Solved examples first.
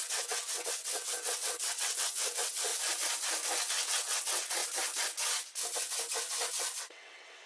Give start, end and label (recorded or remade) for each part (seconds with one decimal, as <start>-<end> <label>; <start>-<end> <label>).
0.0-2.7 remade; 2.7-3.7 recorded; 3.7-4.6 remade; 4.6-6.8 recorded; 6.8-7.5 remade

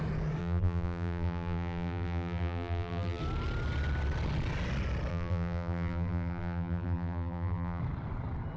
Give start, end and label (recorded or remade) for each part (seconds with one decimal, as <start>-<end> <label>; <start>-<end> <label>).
0.0-0.4 recorded; 0.4-3.2 remade; 3.2-5.1 recorded; 5.1-7.8 remade; 7.8-8.6 recorded

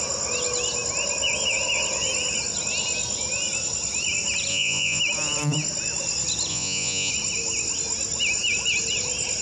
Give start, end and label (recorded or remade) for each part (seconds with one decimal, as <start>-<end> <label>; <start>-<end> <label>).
0.0-4.5 recorded; 4.5-5.0 remade; 5.0-6.5 recorded; 6.5-7.1 remade; 7.1-9.4 recorded

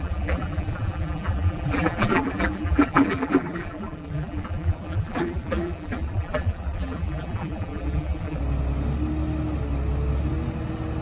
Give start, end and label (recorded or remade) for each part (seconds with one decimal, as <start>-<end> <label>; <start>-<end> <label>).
0.0-8.4 remade; 8.4-11.0 recorded

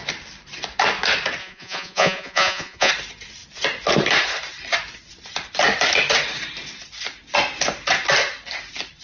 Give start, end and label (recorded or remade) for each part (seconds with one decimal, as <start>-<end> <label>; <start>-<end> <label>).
0.0-1.4 recorded; 1.4-2.9 remade; 2.9-9.0 recorded

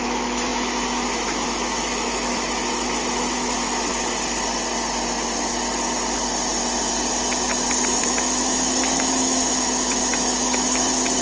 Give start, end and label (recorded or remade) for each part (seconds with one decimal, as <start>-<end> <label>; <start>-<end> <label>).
0.0-3.9 remade; 3.9-8.0 recorded; 8.0-11.2 remade

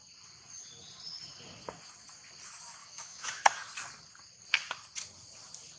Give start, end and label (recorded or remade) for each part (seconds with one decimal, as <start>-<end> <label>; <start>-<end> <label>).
0.0-2.8 recorded; 2.8-3.4 remade; 3.4-5.8 recorded

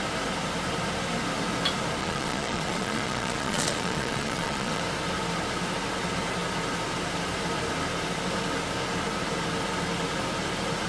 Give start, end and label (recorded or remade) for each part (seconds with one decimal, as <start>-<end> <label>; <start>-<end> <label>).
0.0-2.0 recorded; 2.0-4.8 remade; 4.8-10.9 recorded